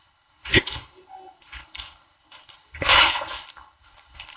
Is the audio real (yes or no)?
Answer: no